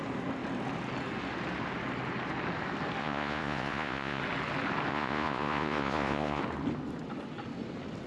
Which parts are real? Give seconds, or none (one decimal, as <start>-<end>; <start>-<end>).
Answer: 0.0-3.0; 4.2-4.9; 6.4-8.1